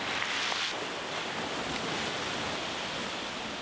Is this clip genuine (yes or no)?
yes